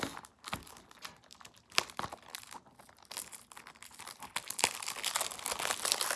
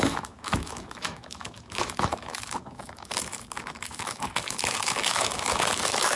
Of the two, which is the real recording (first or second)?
first